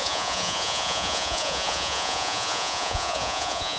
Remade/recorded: remade